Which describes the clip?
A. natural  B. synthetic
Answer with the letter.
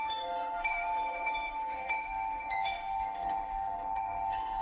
B